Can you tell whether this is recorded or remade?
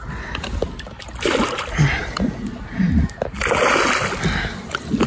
recorded